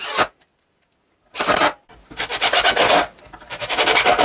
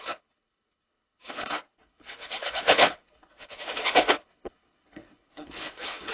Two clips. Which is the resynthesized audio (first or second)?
second